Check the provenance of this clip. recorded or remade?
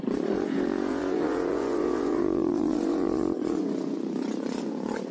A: remade